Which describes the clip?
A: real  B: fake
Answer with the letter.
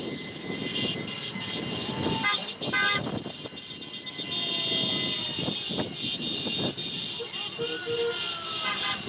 A